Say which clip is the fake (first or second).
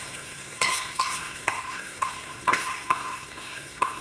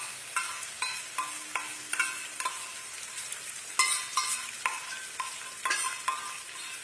first